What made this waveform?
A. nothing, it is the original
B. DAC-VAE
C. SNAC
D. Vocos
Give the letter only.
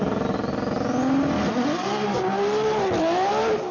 A